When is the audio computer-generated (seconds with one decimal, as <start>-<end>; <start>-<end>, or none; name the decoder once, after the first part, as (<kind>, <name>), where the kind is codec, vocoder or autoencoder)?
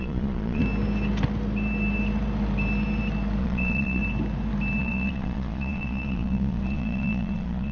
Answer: 0.0-0.6 (vocoder, Vocos); 3.4-4.0; 4.8-7.7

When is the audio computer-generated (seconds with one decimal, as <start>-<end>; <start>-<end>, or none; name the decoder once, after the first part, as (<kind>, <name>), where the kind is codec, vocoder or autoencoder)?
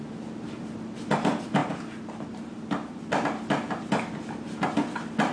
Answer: none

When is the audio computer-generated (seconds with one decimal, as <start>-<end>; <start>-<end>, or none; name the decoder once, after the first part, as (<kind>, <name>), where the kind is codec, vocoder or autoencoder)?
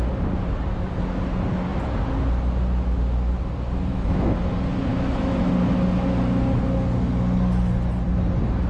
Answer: 3.9-4.4 (autoencoder, DAC-VAE); 4.9-5.5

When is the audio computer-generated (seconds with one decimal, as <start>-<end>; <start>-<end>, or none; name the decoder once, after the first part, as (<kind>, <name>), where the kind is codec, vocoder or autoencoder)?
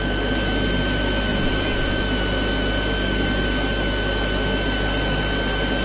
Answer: 1.3-2.0 (vocoder, Vocos)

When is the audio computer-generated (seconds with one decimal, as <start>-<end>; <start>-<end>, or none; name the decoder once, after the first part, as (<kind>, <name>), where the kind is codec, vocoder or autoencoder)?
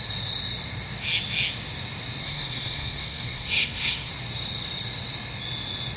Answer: 2.2-4.1 (codec, SNAC)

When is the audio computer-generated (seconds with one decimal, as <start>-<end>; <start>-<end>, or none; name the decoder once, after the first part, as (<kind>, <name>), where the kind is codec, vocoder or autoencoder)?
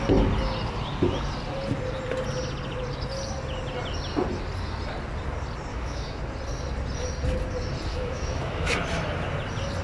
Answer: 5.7-6.2 (autoencoder, DAC-VAE); 7.9-8.7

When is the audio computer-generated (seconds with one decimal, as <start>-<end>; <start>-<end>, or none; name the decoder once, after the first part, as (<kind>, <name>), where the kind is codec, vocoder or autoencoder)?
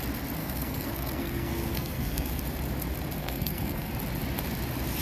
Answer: 0.4-2.4 (codec, SNAC); 3.2-3.9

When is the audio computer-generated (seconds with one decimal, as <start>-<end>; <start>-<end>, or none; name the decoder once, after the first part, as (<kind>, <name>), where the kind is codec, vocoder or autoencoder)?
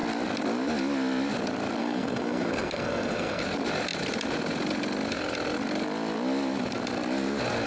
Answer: 1.8-3.4 (codec, SNAC)